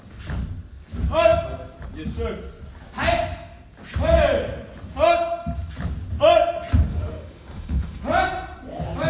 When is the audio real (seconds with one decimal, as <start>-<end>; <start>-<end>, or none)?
0.0-6.9; 8.0-9.1